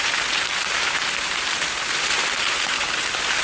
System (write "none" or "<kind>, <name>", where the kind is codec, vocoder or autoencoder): vocoder, BigVGAN v2